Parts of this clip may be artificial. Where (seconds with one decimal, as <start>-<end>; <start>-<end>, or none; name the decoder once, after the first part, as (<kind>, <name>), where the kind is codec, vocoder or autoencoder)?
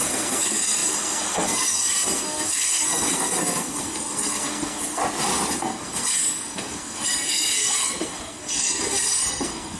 0.0-5.0 (codec, SNAC); 5.6-9.8